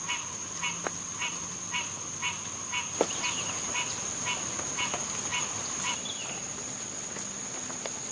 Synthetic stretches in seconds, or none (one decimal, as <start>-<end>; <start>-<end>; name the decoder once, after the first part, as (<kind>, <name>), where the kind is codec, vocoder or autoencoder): none